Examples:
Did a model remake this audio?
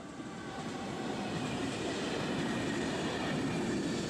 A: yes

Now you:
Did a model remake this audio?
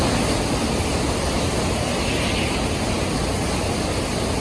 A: no